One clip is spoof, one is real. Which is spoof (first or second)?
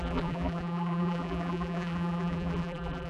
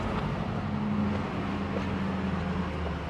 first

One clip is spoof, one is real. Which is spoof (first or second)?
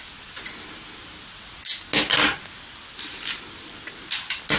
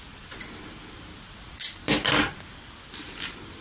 second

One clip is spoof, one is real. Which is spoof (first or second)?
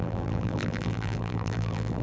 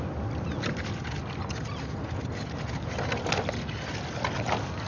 first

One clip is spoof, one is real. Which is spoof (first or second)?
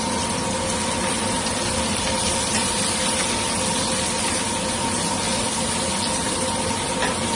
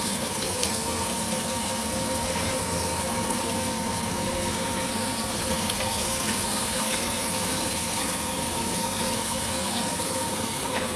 second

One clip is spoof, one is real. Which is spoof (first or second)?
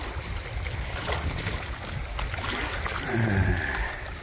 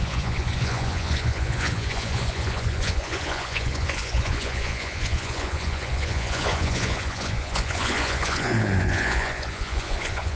second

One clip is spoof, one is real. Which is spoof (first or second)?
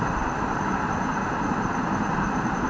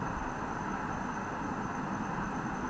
first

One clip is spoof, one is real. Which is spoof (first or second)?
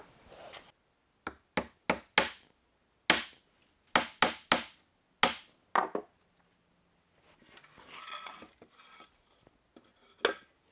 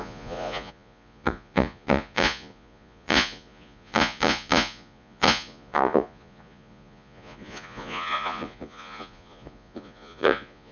second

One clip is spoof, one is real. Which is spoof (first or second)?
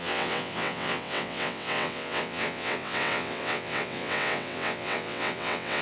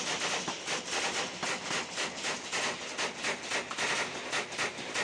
first